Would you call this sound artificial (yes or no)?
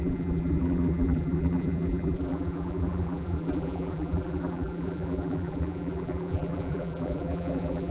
yes